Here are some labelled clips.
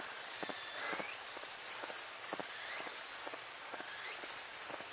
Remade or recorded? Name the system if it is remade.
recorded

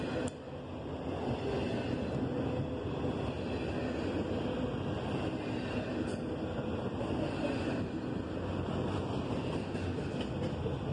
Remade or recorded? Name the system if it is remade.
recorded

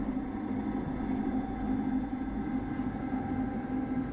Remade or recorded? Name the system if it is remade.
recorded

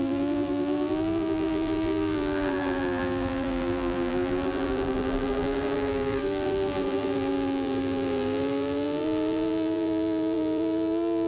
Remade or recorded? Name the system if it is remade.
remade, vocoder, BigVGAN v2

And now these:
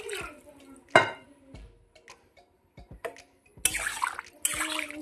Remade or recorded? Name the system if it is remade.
recorded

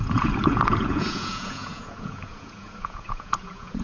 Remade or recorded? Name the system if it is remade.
remade, vocoder, Vocos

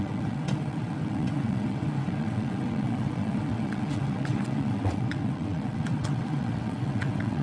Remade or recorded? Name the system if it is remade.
remade, vocoder, WaveNeXt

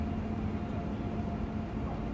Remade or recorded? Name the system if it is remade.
recorded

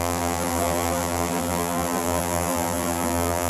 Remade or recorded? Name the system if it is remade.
remade, vocoder, BigVGAN v2